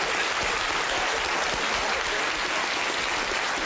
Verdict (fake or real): real